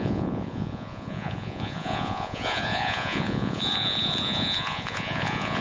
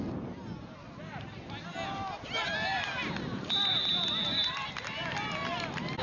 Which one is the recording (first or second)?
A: second